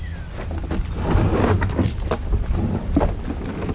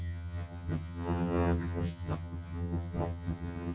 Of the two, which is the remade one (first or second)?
second